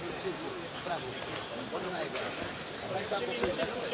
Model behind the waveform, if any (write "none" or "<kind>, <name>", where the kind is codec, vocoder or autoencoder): vocoder, BigVGAN v2